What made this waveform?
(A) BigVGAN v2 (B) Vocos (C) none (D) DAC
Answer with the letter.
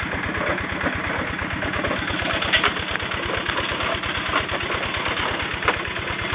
C